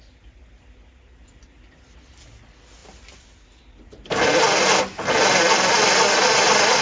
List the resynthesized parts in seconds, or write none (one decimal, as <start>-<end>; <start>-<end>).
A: none